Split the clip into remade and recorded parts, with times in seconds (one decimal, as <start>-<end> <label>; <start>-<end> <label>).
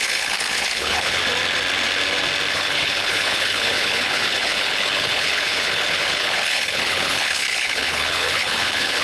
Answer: 0.0-1.2 remade; 1.2-2.5 recorded; 2.5-9.0 remade